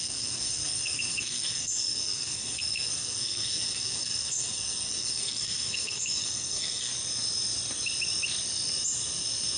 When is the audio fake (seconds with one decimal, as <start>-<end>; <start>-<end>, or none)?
0.0-6.9